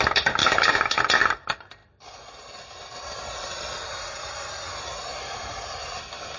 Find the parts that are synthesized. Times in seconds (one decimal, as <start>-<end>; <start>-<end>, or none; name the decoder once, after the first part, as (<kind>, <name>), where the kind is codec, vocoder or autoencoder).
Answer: 0.4-1.0 (autoencoder, DAC-VAE)